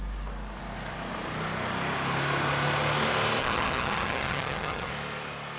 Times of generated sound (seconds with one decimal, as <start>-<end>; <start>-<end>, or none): 3.4-4.9